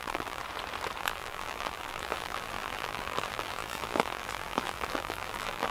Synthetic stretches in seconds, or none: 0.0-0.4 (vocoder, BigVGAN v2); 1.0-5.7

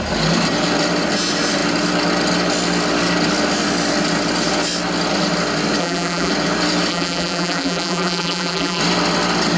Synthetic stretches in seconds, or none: 5.8-6.3 (vocoder, BigVGAN v2); 6.9-8.8

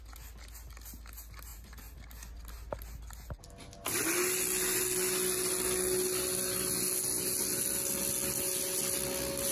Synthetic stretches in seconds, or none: 1.5-2.1 (vocoder, BigVGAN v2)